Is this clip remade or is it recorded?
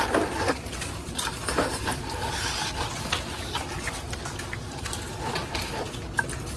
recorded